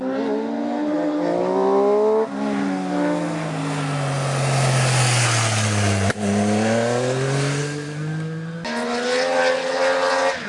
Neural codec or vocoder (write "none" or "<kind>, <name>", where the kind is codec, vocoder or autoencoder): none